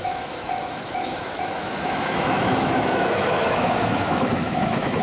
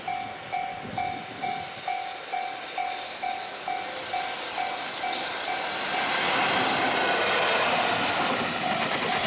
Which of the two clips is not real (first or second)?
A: first